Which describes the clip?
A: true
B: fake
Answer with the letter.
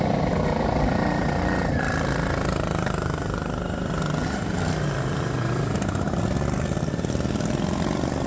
A